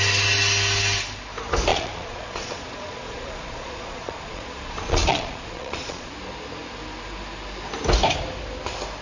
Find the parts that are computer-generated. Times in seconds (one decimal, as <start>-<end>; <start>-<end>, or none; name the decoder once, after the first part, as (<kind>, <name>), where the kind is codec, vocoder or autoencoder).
1.7-6.1 (vocoder, Vocos)